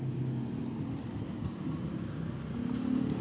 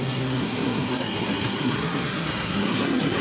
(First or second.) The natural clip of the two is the first